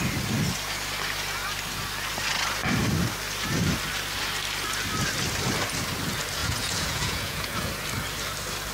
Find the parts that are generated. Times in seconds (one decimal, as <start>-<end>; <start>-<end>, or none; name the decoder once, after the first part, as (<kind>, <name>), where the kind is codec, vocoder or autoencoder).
6.4-7.7 (vocoder, Vocos)